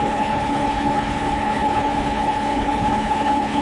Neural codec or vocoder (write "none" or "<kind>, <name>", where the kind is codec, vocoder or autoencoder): codec, HILCodec